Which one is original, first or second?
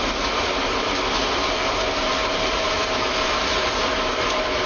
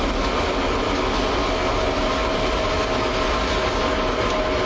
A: second